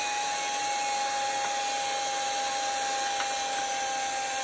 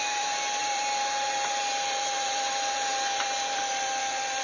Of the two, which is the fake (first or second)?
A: second